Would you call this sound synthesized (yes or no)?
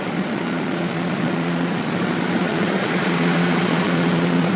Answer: yes